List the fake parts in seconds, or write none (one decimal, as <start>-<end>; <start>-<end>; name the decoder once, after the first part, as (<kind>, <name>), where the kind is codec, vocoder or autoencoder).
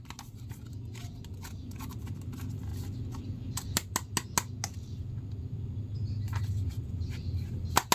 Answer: none